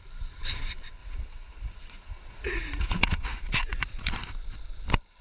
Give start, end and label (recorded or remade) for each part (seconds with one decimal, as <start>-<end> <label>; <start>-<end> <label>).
0.0-1.0 recorded; 1.0-4.1 remade; 4.1-5.2 recorded